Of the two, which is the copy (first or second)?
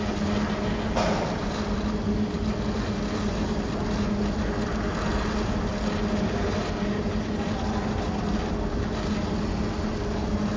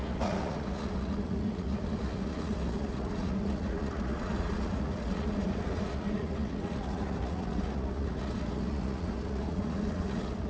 second